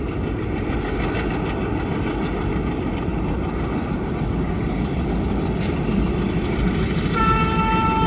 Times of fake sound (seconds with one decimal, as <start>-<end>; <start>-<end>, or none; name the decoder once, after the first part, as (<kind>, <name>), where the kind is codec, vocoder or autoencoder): none